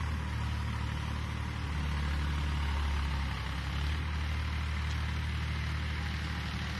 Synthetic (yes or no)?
no